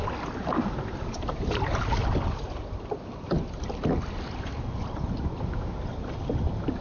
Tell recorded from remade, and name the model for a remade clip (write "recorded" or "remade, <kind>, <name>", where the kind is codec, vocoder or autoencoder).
recorded